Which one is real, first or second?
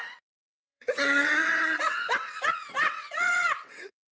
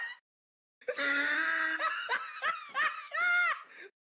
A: second